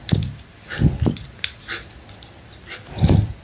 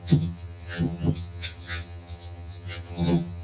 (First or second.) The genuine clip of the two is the first